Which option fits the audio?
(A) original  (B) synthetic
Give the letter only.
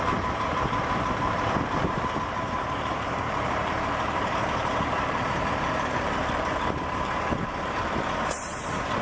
B